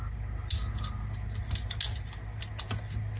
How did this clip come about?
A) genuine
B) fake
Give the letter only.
A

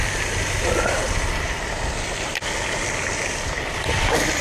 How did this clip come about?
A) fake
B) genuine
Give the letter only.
B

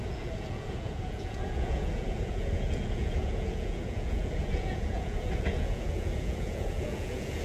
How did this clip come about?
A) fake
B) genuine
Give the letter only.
A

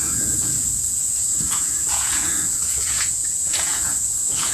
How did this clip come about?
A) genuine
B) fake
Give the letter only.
B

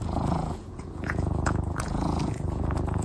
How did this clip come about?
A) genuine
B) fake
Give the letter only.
B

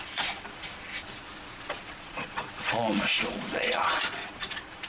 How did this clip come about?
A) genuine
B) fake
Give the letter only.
B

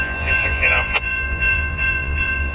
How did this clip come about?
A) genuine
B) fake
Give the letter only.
B